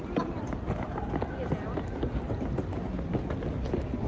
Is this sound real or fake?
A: real